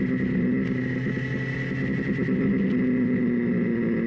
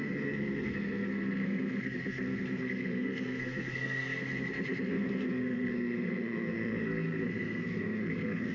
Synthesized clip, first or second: second